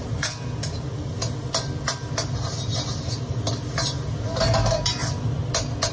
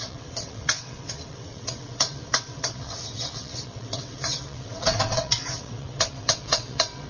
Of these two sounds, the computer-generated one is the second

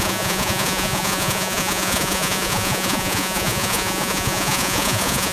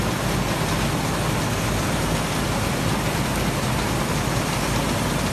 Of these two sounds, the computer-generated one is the first